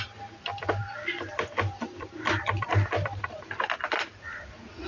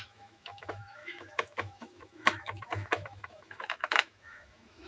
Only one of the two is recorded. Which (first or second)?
first